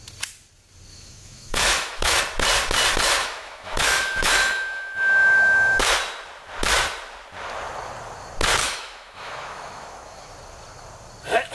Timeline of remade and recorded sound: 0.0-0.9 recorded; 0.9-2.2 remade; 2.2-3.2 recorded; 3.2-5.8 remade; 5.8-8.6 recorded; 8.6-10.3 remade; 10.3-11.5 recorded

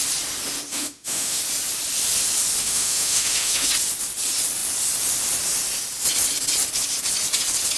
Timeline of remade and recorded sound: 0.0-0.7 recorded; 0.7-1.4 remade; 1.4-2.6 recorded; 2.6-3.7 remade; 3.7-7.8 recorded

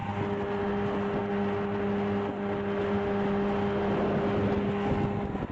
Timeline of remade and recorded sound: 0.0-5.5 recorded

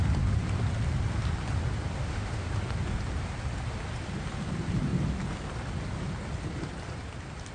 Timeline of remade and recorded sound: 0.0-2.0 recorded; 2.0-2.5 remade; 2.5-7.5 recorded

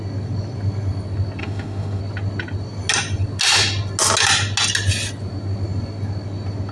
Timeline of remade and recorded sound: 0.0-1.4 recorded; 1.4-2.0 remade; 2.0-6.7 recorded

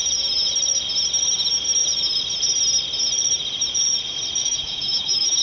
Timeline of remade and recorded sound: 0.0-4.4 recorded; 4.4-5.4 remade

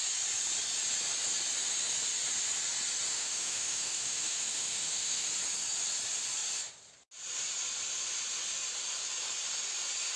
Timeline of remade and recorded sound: 0.0-3.1 recorded; 3.1-5.3 remade; 5.3-10.2 recorded

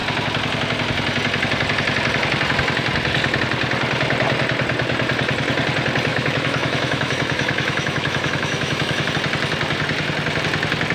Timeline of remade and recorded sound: 0.0-6.1 recorded; 6.1-9.1 remade; 9.1-10.9 recorded